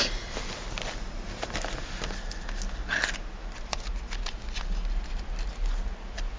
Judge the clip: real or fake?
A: real